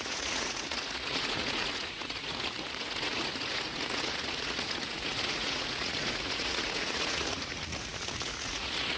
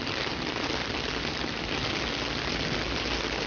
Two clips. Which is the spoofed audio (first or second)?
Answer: first